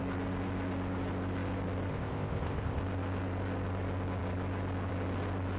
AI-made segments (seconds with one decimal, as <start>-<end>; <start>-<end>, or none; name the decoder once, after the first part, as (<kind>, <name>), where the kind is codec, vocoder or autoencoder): 1.9-2.8 (codec, ZipCodec)